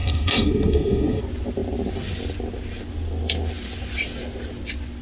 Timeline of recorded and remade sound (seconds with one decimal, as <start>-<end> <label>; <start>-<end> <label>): 0.0-1.2 remade; 1.2-5.0 recorded

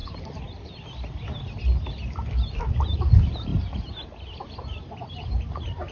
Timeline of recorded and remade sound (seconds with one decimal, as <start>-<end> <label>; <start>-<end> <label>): 0.0-2.6 recorded; 2.6-3.5 remade; 3.5-4.5 recorded; 4.5-5.9 remade

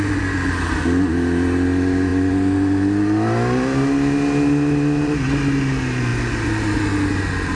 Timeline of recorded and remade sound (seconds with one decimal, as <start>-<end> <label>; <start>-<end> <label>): 0.0-7.6 recorded

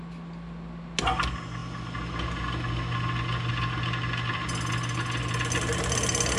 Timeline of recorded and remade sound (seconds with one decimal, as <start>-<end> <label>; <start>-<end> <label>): 0.0-6.4 recorded

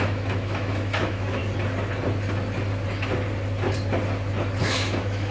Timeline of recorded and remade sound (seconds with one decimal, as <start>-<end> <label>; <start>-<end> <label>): 0.0-1.4 remade; 1.4-4.6 recorded; 4.6-5.3 remade

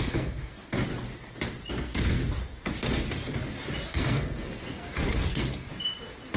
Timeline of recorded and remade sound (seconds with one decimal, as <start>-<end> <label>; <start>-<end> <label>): 0.0-0.9 remade; 0.9-1.7 recorded; 1.7-2.2 remade; 2.2-3.9 recorded; 3.9-5.7 remade; 5.7-6.4 recorded

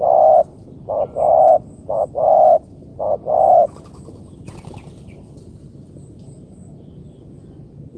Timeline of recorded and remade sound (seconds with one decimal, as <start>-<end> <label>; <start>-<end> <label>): 0.0-8.0 recorded